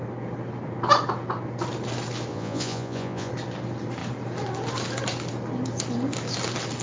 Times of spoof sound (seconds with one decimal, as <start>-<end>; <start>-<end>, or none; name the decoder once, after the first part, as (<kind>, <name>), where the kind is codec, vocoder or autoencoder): 2.3-3.3 (vocoder, Vocos)